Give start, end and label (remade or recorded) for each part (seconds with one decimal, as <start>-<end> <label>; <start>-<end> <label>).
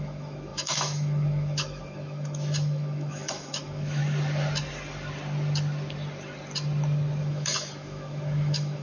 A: 0.0-4.0 remade; 4.0-7.2 recorded; 7.2-8.8 remade